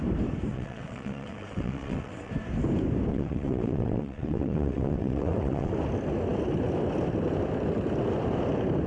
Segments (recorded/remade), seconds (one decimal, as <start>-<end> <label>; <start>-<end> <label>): 0.0-0.5 recorded; 0.5-2.3 remade; 2.3-3.1 recorded; 3.1-5.7 remade; 5.7-8.9 recorded